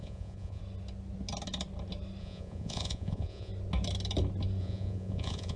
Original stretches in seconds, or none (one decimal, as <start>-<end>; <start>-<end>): 0.6-2.2; 3.5-4.6